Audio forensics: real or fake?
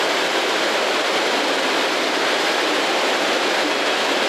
real